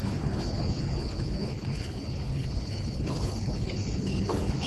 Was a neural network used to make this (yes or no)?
yes